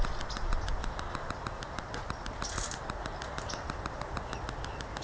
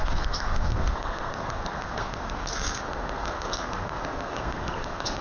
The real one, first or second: first